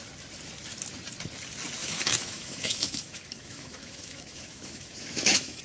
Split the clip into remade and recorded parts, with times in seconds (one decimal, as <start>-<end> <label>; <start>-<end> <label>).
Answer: 0.0-1.8 recorded; 1.8-5.6 remade